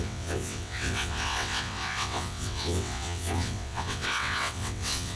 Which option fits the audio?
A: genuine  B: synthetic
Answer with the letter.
B